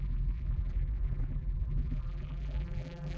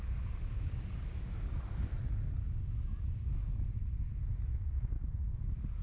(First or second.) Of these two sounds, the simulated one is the first